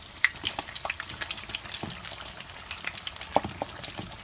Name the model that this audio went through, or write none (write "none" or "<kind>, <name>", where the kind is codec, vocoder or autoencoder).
none